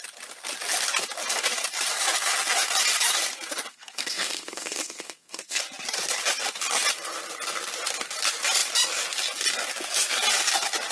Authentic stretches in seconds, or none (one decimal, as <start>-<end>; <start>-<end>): 0.0-3.7; 5.6-10.9